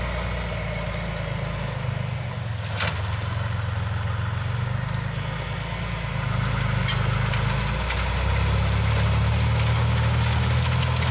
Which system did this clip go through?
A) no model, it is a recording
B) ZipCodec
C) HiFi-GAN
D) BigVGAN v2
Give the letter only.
A